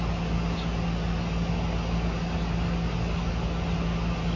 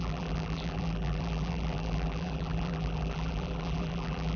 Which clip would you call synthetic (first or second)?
second